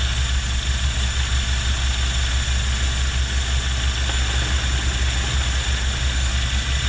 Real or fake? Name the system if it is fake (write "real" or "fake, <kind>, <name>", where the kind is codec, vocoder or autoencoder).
real